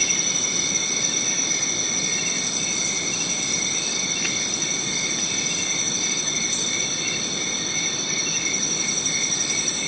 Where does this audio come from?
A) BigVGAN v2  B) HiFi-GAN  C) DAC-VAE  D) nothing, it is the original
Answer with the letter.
D